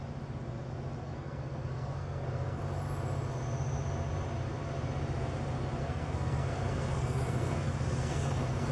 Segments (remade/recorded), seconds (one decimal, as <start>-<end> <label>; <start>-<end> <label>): 0.0-1.0 recorded; 1.0-2.6 remade; 2.6-5.8 recorded; 5.8-8.7 remade